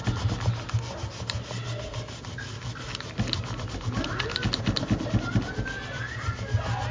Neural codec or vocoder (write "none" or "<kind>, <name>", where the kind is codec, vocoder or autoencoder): none